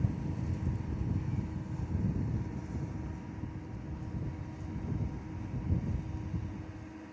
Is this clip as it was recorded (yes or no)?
yes